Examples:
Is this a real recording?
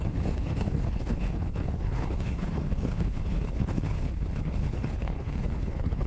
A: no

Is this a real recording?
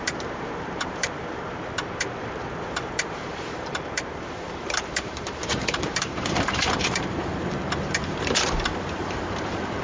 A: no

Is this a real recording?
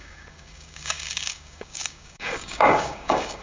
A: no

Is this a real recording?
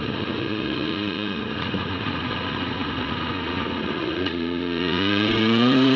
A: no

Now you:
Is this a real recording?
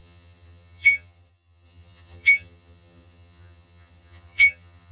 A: no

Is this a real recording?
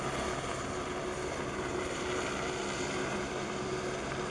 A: yes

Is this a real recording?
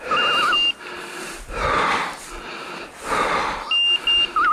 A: yes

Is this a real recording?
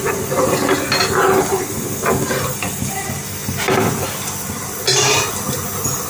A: yes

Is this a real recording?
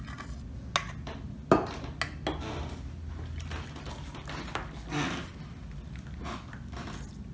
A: yes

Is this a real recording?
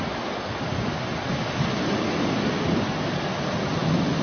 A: yes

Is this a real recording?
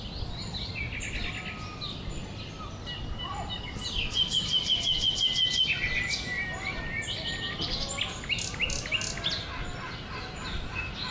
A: yes